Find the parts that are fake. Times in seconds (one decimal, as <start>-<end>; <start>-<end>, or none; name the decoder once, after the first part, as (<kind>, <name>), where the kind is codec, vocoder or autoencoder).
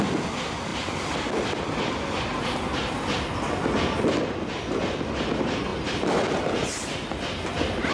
none